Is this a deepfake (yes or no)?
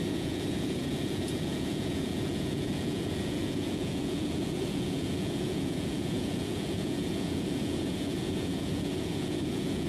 yes